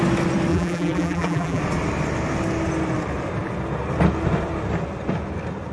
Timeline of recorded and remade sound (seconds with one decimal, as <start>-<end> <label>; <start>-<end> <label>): 0.0-0.5 recorded; 0.5-1.6 remade; 1.6-5.7 recorded